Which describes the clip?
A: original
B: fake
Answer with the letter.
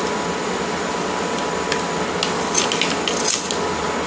A